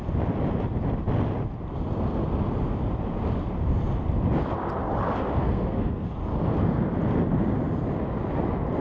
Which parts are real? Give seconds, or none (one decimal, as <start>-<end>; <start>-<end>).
0.0-5.4; 6.1-8.8